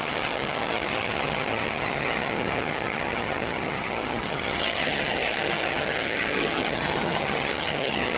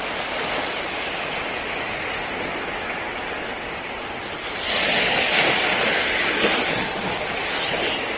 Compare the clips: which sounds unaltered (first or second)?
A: second